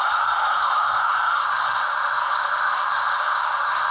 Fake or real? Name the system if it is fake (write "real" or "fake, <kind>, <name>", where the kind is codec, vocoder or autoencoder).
fake, codec, SNAC